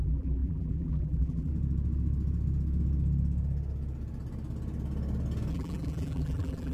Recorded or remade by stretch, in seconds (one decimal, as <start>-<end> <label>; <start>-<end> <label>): 0.0-1.5 remade; 1.5-5.5 recorded; 5.5-6.7 remade